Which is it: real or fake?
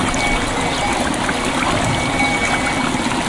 real